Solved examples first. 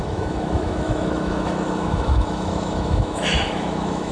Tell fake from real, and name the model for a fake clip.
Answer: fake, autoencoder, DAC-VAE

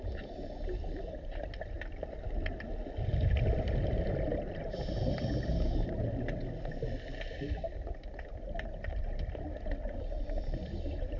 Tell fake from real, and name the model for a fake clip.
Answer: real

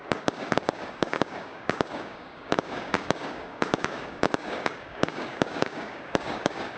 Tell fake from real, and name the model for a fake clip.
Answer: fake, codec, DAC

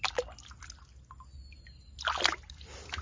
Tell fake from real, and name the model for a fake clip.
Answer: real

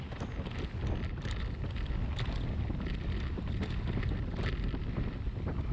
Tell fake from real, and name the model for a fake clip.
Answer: real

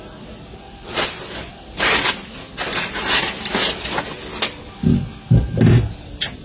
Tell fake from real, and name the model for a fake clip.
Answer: real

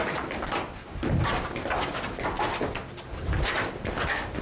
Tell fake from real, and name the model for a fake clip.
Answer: real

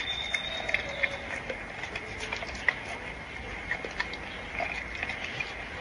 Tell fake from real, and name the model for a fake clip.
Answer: real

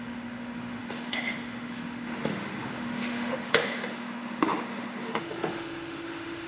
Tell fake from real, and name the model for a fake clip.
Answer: fake, autoencoder, DAC-VAE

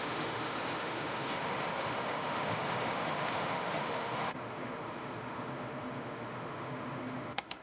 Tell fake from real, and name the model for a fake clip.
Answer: fake, autoencoder, DAC-VAE